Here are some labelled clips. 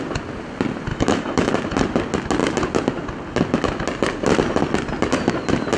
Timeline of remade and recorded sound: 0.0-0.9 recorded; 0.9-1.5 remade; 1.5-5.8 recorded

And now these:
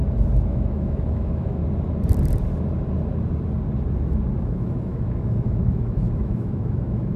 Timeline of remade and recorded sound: 0.0-0.5 recorded; 0.5-1.6 remade; 1.6-4.4 recorded; 4.4-7.2 remade

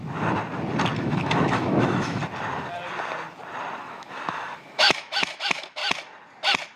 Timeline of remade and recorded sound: 0.0-1.0 recorded; 1.0-2.2 remade; 2.2-3.8 recorded; 3.8-5.8 remade; 5.8-6.8 recorded

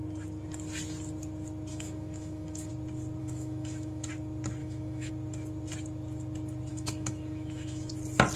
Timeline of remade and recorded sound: 0.0-1.7 recorded; 1.7-2.7 remade; 2.7-3.2 recorded; 3.2-4.1 remade; 4.1-4.6 recorded; 4.6-5.1 remade; 5.1-6.7 recorded; 6.7-7.9 remade; 7.9-8.4 recorded